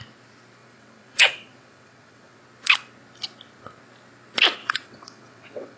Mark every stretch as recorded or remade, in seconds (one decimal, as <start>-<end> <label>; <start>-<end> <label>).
0.0-0.6 recorded; 0.6-2.4 remade; 2.4-4.6 recorded; 4.6-5.8 remade